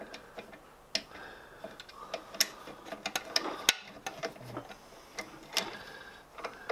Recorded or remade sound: recorded